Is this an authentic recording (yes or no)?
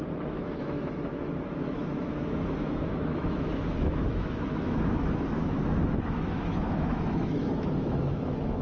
no